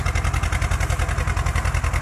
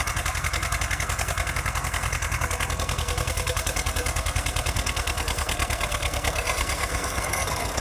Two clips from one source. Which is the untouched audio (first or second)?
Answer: first